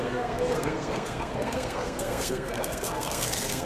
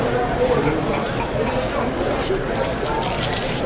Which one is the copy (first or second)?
first